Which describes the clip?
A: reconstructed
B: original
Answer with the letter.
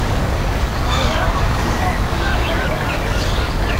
A